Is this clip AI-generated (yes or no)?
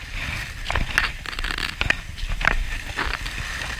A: no